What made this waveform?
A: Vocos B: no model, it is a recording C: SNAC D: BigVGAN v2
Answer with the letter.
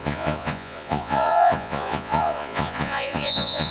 A